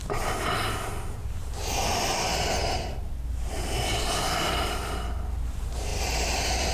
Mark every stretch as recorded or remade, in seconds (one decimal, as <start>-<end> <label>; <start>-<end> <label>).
0.0-5.9 recorded; 5.9-6.7 remade